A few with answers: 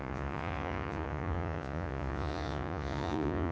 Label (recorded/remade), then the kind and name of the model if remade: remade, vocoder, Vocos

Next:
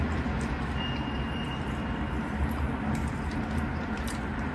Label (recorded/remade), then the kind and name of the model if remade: recorded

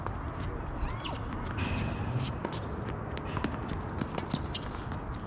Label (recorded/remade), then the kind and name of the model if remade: recorded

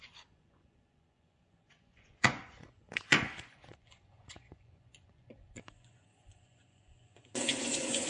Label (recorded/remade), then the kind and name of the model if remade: remade, vocoder, Vocos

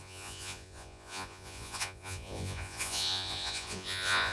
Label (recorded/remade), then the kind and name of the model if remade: remade, vocoder, Vocos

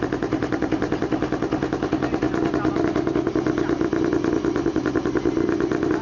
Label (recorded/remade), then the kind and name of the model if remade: recorded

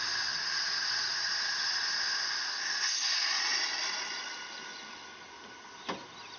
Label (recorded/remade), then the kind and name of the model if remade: recorded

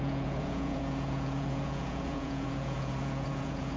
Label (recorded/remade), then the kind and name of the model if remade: remade, vocoder, Vocos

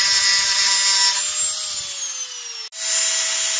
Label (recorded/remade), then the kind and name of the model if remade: recorded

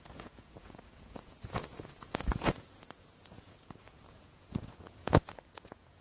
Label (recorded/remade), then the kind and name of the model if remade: remade, vocoder, Vocos